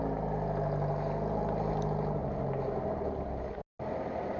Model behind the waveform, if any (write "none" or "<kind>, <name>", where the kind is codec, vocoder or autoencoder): none